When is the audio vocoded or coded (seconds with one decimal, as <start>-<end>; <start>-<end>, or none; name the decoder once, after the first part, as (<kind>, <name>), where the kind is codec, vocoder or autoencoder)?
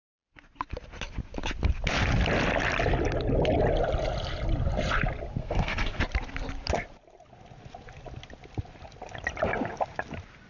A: 5.4-6.0 (codec, SNAC)